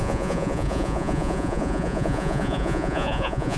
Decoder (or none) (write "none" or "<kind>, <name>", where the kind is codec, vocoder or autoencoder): vocoder, Vocos